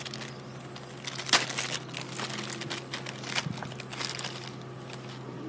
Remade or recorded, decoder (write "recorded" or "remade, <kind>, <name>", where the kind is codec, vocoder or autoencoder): recorded